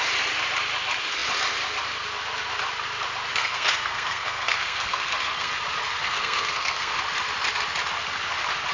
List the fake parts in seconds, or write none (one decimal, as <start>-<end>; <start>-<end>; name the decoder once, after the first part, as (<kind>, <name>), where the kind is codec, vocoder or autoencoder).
3.3-5.5 (codec, SNAC); 6.0-7.0